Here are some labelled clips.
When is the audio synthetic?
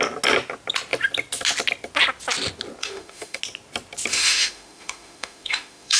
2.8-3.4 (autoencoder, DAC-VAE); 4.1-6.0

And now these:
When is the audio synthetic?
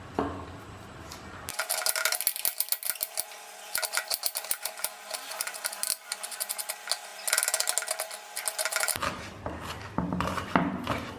none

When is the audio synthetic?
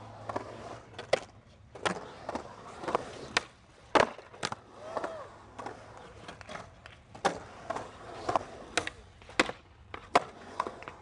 10.3-11.0 (vocoder, Vocos)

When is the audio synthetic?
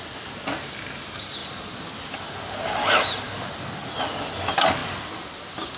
none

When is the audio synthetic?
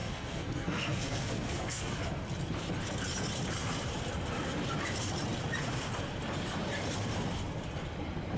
0.0-1.9 (codec, SNAC)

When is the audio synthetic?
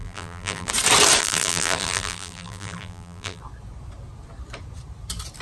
0.0-0.7 (vocoder, BigVGAN v2); 1.2-3.4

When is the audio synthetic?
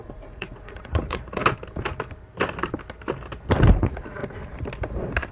0.0-1.4 (vocoder, Vocos); 3.8-4.2